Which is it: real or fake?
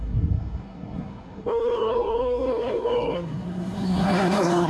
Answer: fake